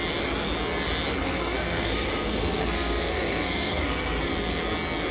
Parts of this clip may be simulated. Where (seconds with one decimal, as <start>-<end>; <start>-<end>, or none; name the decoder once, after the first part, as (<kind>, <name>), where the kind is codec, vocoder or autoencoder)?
1.2-4.3 (codec, SNAC)